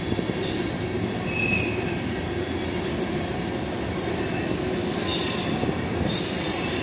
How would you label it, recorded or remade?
recorded